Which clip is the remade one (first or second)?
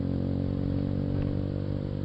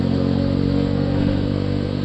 second